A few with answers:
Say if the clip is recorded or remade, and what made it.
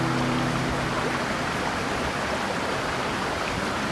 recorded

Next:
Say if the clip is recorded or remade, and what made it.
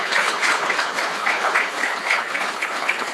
remade, codec, HILCodec